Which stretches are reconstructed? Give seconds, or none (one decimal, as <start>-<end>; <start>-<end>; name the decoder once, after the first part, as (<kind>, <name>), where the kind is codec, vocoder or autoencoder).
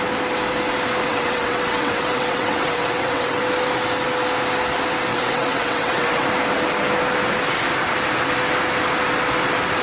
1.0-3.4 (vocoder, WaveNeXt); 5.1-6.3